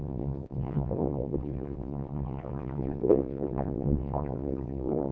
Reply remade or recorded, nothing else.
remade